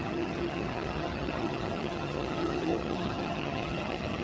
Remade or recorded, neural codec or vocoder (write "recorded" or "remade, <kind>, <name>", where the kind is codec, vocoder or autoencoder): remade, vocoder, HiFi-GAN